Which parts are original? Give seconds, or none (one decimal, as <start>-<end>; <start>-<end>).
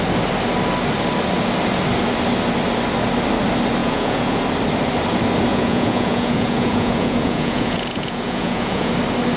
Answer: 0.0-3.8; 4.4-5.5; 8.9-9.4